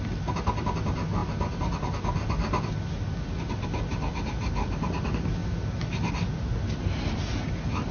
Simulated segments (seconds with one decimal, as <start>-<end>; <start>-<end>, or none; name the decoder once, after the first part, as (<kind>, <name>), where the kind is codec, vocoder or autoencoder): none